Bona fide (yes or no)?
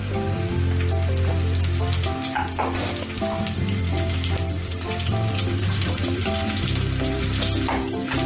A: yes